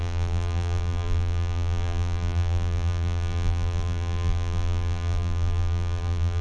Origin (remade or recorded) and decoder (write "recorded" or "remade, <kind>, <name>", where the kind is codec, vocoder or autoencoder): remade, vocoder, BigVGAN v2